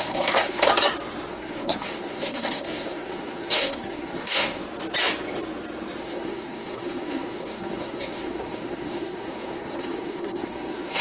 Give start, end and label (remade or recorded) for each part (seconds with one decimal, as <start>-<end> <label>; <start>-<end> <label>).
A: 0.0-0.7 remade; 0.7-1.3 recorded; 1.3-4.6 remade; 4.6-6.0 recorded; 6.0-11.0 remade